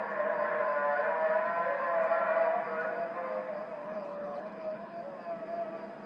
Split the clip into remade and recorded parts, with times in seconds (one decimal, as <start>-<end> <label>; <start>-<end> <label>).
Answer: 0.0-3.8 recorded; 3.8-5.0 remade; 5.0-6.1 recorded